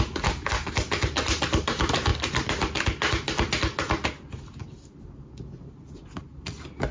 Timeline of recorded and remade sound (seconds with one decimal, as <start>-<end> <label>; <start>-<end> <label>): 0.0-6.9 recorded